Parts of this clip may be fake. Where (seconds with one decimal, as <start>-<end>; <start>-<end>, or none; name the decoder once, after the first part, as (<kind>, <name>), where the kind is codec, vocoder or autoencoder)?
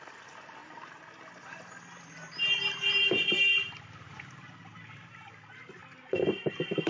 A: none